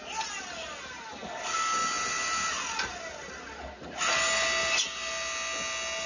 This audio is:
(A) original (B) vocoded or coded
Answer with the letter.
A